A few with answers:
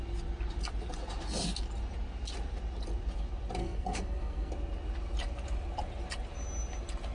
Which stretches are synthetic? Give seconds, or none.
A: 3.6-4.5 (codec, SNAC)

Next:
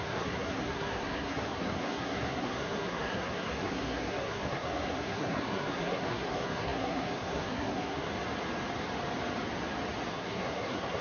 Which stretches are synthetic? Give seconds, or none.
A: 0.0-8.1 (codec, SNAC); 10.1-11.0

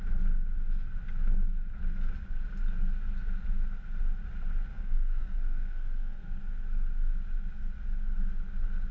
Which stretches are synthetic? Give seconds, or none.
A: 4.7-6.4 (codec, SNAC)

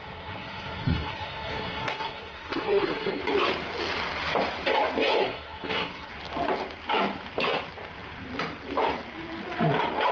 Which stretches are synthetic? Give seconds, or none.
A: 0.0-3.2 (codec, SNAC); 5.2-6.1

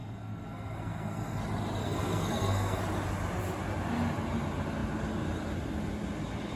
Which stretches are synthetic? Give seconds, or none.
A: 0.0-1.4 (codec, SNAC); 1.8-2.8

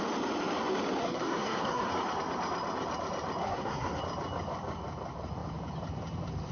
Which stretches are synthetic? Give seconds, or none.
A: 1.0-1.9 (codec, SNAC); 3.4-4.0

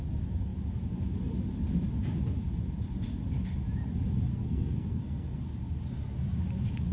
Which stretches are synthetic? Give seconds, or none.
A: 4.3-5.4 (codec, SNAC)